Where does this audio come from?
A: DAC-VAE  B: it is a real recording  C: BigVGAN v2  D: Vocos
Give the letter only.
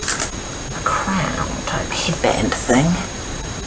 B